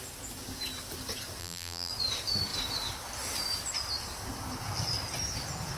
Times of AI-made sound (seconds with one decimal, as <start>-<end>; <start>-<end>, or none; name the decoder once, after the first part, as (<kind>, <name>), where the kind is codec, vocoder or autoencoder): 1.4-1.9 (vocoder, BigVGAN v2)